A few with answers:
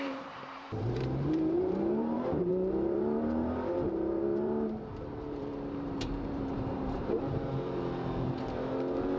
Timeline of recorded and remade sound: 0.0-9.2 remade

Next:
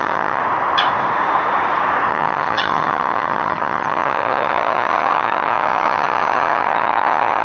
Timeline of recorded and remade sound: 0.0-0.4 remade; 0.4-2.1 recorded; 2.1-7.4 remade

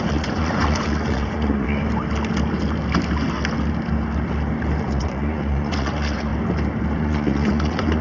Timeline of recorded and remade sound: 0.0-1.8 remade; 1.8-4.8 recorded; 4.8-6.3 remade; 6.3-7.0 recorded; 7.0-8.0 remade

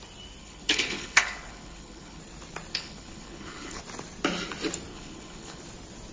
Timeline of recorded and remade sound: 0.0-0.4 recorded; 0.4-2.2 remade; 2.2-2.7 recorded; 2.7-3.8 remade; 3.8-4.9 recorded; 4.9-5.6 remade; 5.6-6.1 recorded

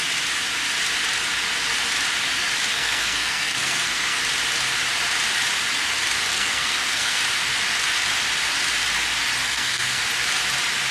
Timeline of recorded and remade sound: 0.0-2.7 recorded; 2.7-4.2 remade; 4.2-6.3 recorded; 6.3-7.2 remade; 7.2-9.4 recorded; 9.4-10.0 remade; 10.0-10.9 recorded

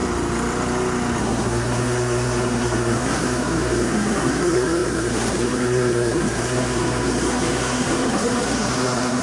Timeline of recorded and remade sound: 0.0-1.2 recorded; 1.2-9.2 remade

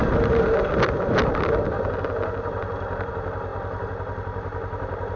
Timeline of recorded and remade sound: 0.0-5.2 recorded

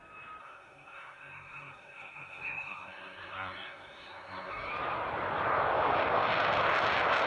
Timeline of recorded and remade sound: 0.0-0.4 recorded; 0.4-4.7 remade; 4.7-7.3 recorded